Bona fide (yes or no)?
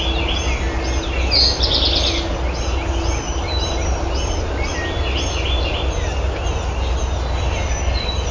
yes